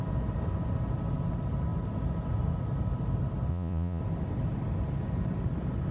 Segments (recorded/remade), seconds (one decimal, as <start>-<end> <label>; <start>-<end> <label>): 0.0-3.5 recorded; 3.5-4.0 remade; 4.0-5.9 recorded